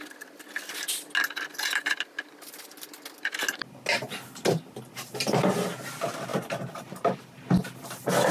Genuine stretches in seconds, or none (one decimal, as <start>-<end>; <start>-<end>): 0.0-8.3